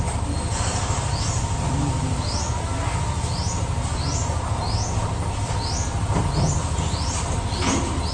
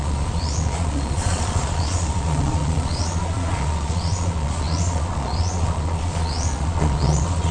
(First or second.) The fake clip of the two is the second